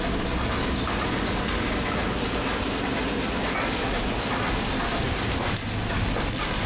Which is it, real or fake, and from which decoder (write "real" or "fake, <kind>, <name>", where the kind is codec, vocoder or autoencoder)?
real